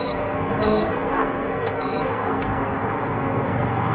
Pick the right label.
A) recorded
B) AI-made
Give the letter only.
B